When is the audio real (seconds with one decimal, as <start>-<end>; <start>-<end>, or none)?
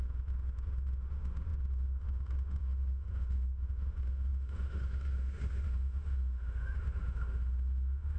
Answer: none